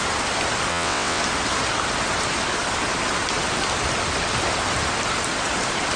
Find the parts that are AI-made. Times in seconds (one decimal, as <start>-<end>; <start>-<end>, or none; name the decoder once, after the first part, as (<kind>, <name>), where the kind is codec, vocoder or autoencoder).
0.7-1.2 (vocoder, WaveNeXt)